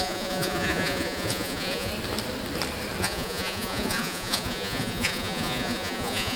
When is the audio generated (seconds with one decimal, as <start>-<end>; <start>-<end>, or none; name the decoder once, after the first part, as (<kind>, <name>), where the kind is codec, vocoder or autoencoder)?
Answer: 0.0-1.9 (vocoder, Vocos); 3.0-6.4